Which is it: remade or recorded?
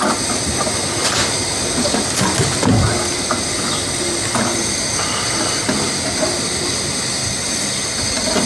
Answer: recorded